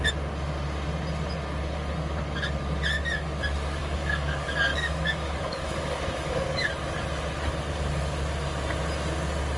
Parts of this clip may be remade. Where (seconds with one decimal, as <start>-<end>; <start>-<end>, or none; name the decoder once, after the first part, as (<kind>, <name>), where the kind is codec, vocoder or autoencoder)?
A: 3.8-6.7 (codec, DAC)